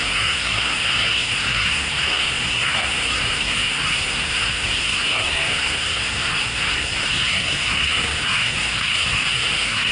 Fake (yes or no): yes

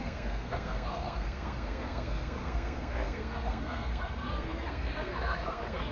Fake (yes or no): yes